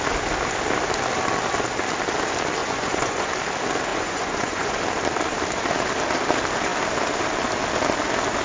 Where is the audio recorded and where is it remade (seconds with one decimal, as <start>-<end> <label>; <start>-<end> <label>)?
0.0-2.6 recorded; 2.6-3.3 remade; 3.3-3.9 recorded; 3.9-4.8 remade; 4.8-8.4 recorded